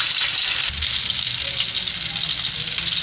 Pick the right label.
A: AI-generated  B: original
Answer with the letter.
B